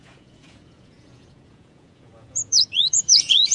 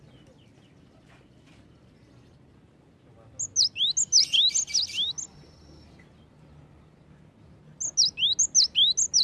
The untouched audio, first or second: second